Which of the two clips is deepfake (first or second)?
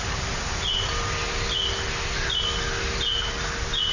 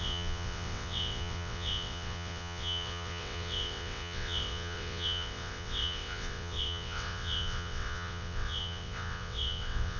second